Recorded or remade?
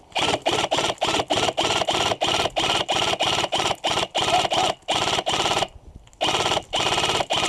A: recorded